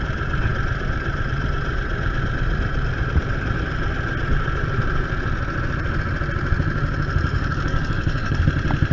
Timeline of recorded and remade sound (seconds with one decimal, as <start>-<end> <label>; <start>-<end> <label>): 0.0-7.3 recorded; 7.3-8.4 remade; 8.4-8.9 recorded